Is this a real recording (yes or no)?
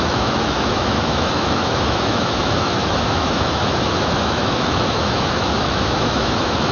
no